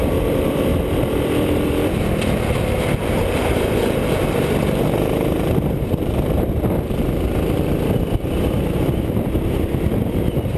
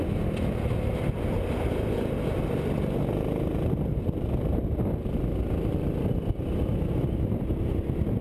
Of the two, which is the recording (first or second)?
second